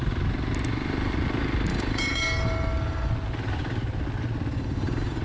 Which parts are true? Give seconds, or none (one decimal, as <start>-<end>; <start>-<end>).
0.0-1.7; 3.1-4.5